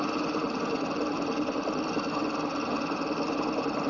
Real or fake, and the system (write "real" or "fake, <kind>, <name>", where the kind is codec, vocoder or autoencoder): real